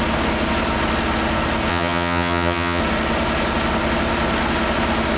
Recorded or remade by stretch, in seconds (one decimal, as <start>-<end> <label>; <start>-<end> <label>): 0.0-1.7 recorded; 1.7-2.8 remade; 2.8-5.2 recorded